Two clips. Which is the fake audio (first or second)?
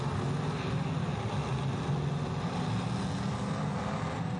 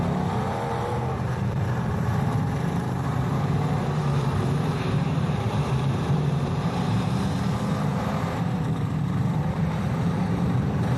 second